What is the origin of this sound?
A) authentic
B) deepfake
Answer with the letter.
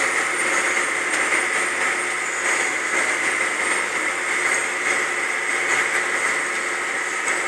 A